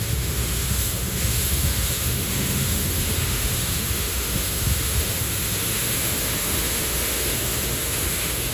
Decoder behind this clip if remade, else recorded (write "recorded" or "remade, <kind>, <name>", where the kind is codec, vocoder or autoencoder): remade, autoencoder, DAC-VAE